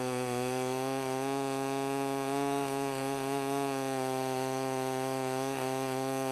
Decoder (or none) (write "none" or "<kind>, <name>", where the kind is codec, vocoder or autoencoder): autoencoder, DAC-VAE